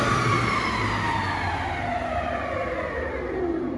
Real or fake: real